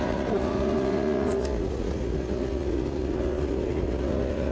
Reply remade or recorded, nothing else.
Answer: remade